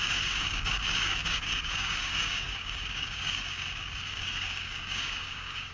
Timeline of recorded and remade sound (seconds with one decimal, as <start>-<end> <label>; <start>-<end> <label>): 0.0-5.7 remade

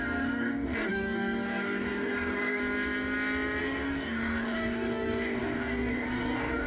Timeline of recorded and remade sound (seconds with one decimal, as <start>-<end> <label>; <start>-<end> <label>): 0.0-2.6 remade; 2.6-3.6 recorded; 3.6-6.7 remade

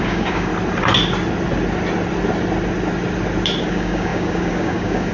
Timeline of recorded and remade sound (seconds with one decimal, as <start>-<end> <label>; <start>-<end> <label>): 0.0-0.5 remade; 0.5-3.6 recorded; 3.6-5.1 remade

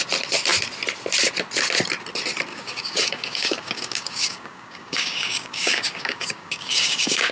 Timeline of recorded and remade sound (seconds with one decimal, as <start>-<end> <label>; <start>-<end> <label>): 0.0-2.5 recorded; 2.5-7.3 remade

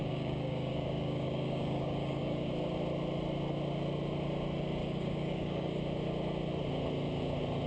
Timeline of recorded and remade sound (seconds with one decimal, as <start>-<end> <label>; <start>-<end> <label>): 0.0-2.5 remade; 2.5-4.8 recorded; 4.8-5.8 remade; 5.8-7.7 recorded